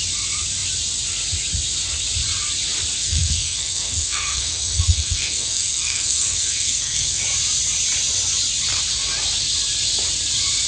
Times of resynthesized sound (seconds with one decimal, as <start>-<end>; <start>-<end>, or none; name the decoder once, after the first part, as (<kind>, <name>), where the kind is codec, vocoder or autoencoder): 3.0-7.2 (codec, SNAC)